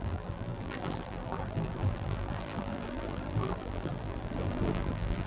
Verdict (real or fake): fake